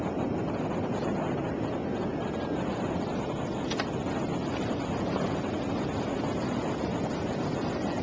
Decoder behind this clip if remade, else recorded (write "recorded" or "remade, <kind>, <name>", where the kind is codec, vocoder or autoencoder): recorded